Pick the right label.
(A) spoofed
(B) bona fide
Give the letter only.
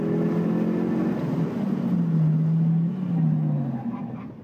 B